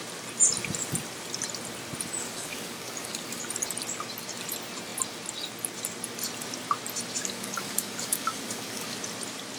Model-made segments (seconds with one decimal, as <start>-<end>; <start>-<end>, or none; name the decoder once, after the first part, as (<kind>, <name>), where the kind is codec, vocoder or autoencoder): 2.2-3.4 (codec, DAC); 7.2-9.0